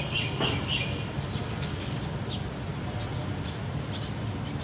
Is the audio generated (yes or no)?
no